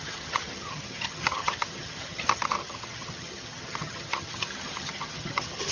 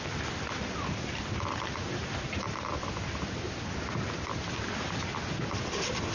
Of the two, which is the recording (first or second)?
second